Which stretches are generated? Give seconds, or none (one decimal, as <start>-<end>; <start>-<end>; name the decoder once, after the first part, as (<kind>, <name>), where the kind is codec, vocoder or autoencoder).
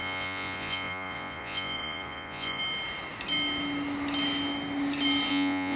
0.0-2.6 (vocoder, Vocos); 5.3-5.8